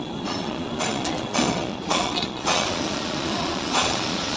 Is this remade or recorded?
remade